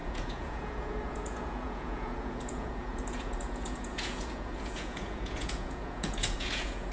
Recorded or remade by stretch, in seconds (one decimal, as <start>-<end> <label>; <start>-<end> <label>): 0.0-6.9 remade

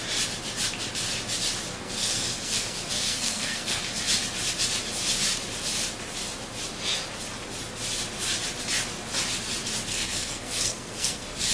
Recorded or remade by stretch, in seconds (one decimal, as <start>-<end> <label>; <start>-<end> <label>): 0.0-1.7 recorded; 1.7-3.8 remade; 3.8-9.9 recorded; 9.9-11.5 remade

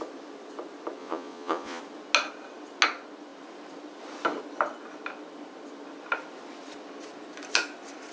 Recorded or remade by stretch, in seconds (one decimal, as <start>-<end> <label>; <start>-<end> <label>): 0.0-1.0 recorded; 1.0-1.8 remade; 1.8-8.1 recorded